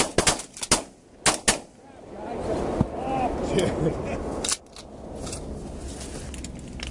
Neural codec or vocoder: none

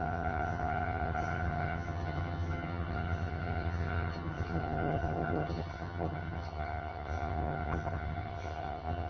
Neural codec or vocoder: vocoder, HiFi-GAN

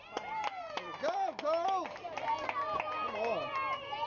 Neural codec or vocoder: none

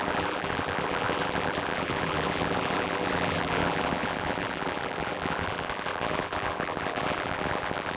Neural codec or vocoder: vocoder, BigVGAN v2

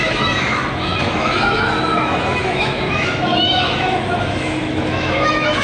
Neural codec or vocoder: autoencoder, DAC-VAE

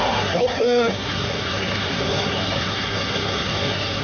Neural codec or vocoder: codec, SNAC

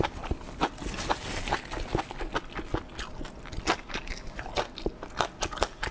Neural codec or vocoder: none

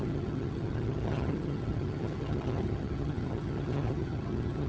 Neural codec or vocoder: vocoder, HiFi-GAN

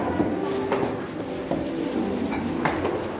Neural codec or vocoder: none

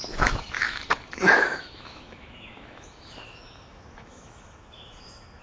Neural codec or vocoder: autoencoder, DAC-VAE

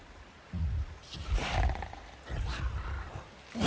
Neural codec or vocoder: none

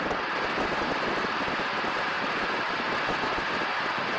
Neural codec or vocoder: none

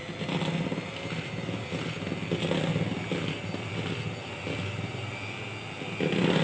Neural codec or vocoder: none